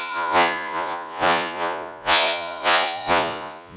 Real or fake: fake